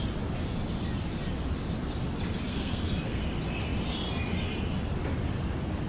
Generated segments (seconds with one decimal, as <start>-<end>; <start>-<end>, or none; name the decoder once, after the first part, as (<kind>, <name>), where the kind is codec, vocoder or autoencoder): 2.5-3.2 (codec, SNAC)